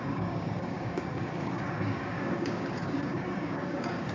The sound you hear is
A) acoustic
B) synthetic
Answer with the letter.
B